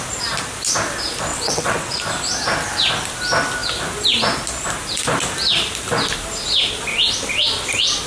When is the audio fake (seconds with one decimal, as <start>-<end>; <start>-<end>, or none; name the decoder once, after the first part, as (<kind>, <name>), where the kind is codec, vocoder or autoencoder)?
1.3-2.0 (vocoder, WaveNeXt)